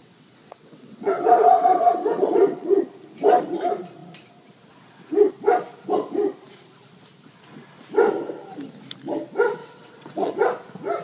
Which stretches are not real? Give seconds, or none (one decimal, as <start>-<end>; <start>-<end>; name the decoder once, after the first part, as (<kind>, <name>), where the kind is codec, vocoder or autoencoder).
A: 0.0-2.8 (vocoder, WaveNeXt); 9.6-10.3